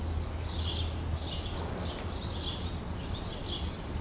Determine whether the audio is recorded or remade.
recorded